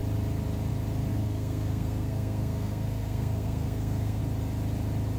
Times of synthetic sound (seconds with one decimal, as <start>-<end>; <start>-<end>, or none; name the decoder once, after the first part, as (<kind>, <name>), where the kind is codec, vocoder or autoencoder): 1.1-4.2 (codec, SNAC)